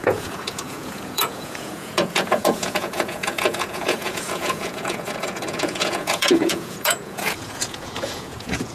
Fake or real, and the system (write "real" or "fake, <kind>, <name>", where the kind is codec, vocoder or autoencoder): fake, vocoder, Vocos